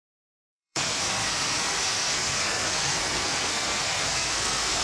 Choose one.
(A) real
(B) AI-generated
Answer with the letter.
B